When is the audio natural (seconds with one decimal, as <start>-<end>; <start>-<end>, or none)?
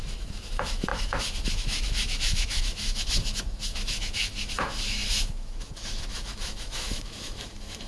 none